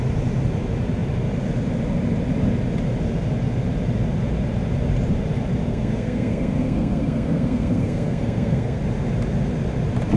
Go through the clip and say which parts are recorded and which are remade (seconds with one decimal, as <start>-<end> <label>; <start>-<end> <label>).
0.0-5.7 recorded; 5.7-8.8 remade; 8.8-10.2 recorded